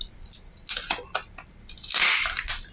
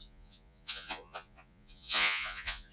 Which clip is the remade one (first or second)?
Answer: second